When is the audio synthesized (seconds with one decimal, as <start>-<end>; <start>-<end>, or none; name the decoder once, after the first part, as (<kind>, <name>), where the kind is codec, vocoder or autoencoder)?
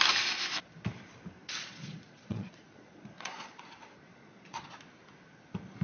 1.4-3.6 (vocoder, Vocos); 4.1-4.8